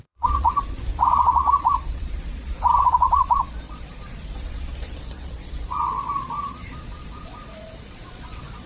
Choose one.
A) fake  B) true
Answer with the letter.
A